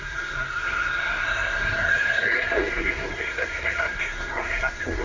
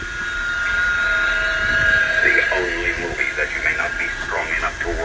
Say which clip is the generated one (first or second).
first